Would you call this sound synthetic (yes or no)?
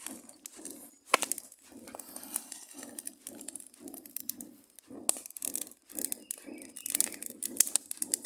no